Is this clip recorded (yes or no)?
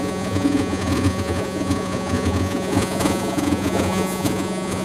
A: no